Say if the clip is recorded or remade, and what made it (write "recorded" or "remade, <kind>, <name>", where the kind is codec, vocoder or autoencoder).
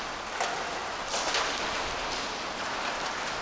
recorded